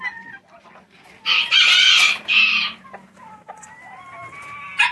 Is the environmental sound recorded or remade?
recorded